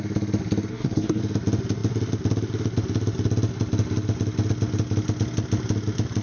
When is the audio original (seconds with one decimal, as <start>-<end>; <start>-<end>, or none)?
0.0-0.7; 1.2-6.2